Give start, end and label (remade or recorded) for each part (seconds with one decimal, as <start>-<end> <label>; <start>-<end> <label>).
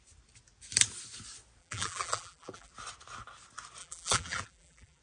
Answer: 0.0-1.6 recorded; 1.6-2.7 remade; 2.7-3.8 recorded; 3.8-5.0 remade